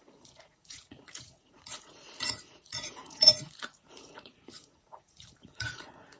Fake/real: fake